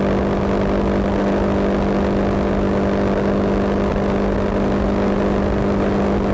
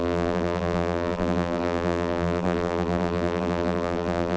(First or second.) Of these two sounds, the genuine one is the first